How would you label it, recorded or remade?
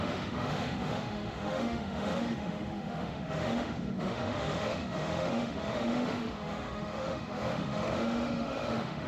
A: remade